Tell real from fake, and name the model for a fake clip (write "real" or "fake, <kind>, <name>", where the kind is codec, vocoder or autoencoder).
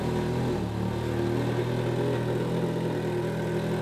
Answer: real